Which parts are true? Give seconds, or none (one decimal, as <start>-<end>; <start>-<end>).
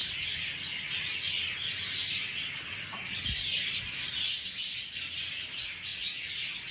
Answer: 0.0-6.7